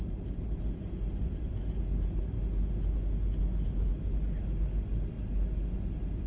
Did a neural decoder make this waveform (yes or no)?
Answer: no